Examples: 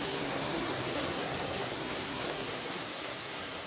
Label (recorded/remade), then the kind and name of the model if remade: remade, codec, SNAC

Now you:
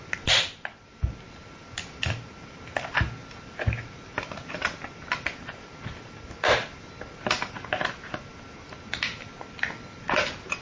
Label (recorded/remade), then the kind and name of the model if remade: recorded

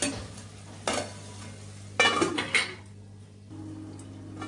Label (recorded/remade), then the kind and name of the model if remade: recorded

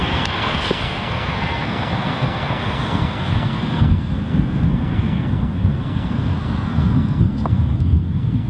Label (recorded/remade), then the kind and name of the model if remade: remade, codec, SNAC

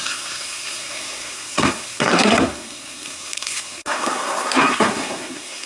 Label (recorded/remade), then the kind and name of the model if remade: remade, codec, SNAC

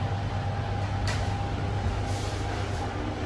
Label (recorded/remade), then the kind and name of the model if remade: recorded